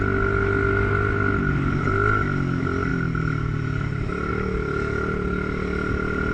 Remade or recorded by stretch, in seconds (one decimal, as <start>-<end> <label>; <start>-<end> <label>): 0.0-6.3 recorded